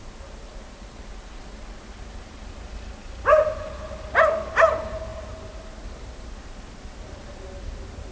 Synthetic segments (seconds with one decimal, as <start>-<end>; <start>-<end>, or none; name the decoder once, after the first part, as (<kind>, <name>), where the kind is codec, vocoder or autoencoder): none